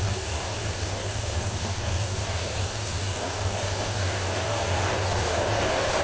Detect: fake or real fake